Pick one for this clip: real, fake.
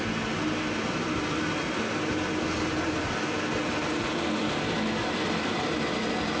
real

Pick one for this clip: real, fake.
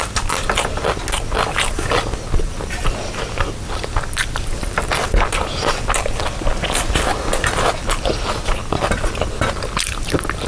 real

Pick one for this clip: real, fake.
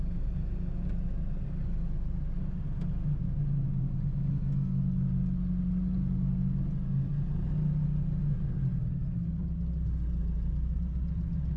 real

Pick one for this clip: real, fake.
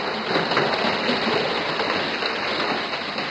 real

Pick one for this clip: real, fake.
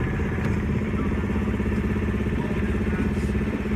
real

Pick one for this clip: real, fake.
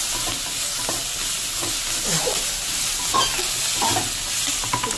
real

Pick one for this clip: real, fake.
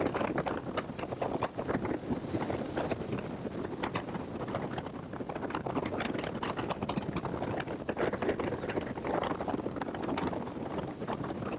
real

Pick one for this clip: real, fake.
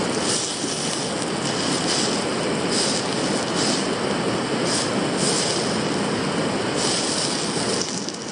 real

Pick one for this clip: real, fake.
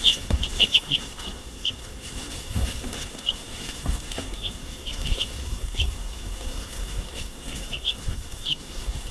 fake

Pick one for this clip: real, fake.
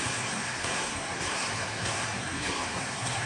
fake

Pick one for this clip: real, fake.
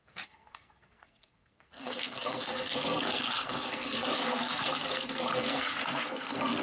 fake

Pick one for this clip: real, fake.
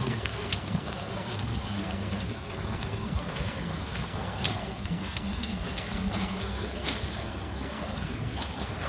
fake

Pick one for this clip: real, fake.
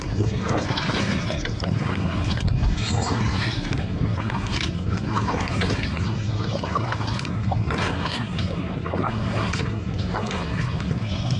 fake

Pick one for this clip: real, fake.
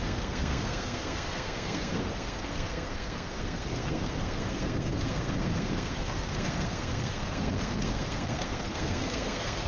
fake